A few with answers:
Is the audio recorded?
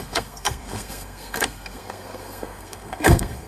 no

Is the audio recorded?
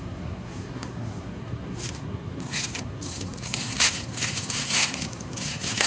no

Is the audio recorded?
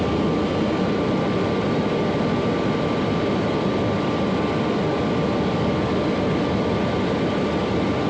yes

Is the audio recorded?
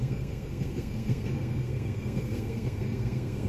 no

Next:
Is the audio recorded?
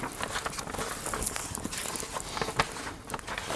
yes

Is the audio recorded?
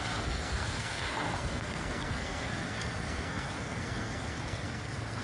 no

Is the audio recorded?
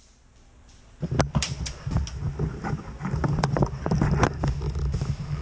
yes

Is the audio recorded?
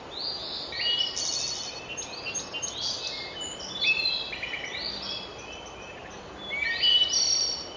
yes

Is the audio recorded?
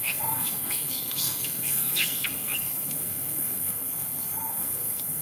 no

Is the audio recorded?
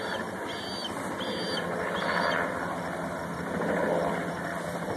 yes